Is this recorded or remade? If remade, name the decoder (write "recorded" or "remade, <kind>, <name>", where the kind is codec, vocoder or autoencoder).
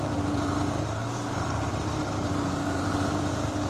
remade, vocoder, BigVGAN v2